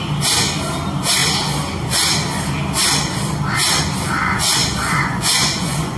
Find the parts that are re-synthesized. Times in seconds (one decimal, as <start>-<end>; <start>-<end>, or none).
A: 4.2-6.0